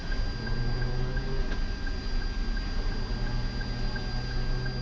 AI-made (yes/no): no